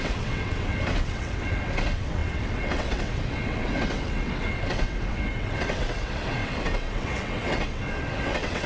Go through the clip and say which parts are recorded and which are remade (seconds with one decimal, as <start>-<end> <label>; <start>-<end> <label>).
0.0-8.7 remade